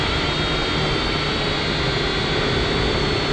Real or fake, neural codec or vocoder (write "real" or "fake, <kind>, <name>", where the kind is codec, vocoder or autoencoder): real